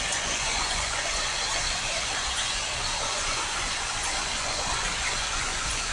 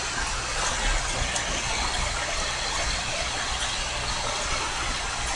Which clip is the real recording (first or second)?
second